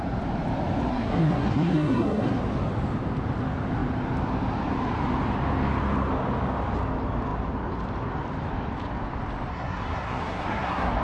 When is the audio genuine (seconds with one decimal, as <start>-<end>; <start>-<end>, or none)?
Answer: 0.0-0.9; 2.4-9.5